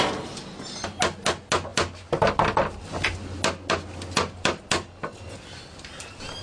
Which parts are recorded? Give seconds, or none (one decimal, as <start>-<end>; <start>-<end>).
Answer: 0.0-6.4